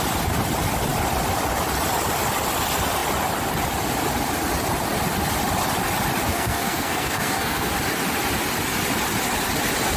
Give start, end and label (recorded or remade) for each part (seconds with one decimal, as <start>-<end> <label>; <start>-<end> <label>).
0.0-6.3 recorded; 6.3-7.7 remade; 7.7-10.0 recorded